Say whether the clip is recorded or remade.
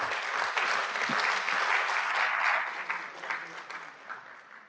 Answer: recorded